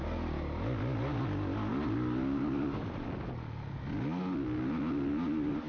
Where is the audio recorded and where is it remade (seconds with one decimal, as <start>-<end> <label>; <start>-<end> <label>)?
0.0-5.7 recorded